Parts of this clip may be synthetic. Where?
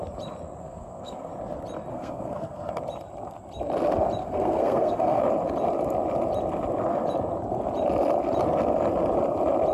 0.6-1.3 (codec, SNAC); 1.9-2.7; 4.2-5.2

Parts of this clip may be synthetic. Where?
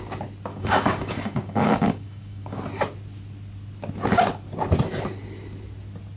0.5-2.6 (codec, DAC)